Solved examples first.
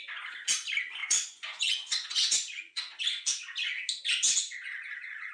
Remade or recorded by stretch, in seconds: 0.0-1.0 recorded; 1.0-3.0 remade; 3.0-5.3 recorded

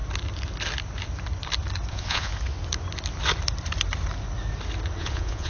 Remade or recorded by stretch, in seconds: 0.0-1.9 recorded; 1.9-2.3 remade; 2.3-5.0 recorded; 5.0-5.5 remade

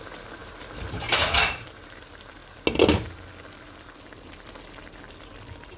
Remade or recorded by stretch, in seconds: 0.0-0.4 recorded; 0.4-2.0 remade; 2.0-5.8 recorded

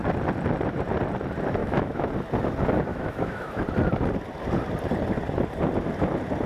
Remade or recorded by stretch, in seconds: 0.0-1.6 recorded; 1.6-2.1 remade; 2.1-2.9 recorded; 2.9-3.6 remade; 3.6-6.5 recorded

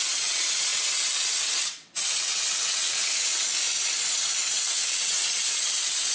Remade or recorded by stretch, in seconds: 0.0-3.5 remade; 3.5-4.5 recorded; 4.5-6.1 remade

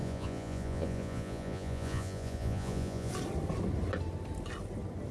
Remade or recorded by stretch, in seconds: 0.0-3.1 remade; 3.1-5.1 recorded

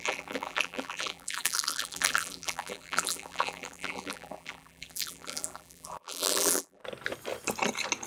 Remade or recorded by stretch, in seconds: 0.0-6.8 remade; 6.8-8.1 recorded

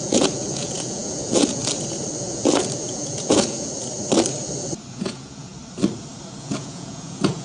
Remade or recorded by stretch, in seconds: 0.0-1.6 remade; 1.6-2.2 recorded; 2.2-3.7 remade; 3.7-4.9 recorded; 4.9-5.5 remade; 5.5-6.4 recorded; 6.4-7.4 remade